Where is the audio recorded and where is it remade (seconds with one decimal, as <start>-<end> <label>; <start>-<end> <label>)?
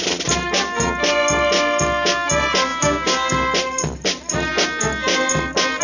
0.0-2.7 recorded; 2.7-3.3 remade; 3.3-5.8 recorded